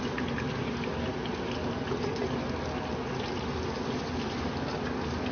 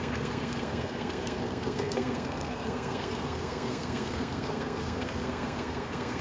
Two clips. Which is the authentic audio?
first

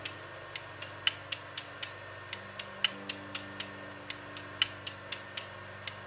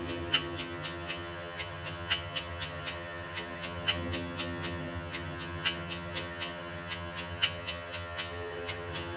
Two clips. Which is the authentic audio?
first